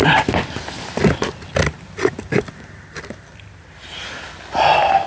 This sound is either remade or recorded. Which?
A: recorded